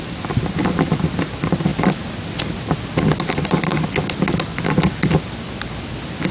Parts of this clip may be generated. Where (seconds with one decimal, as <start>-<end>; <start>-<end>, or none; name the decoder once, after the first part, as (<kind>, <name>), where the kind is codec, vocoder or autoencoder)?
none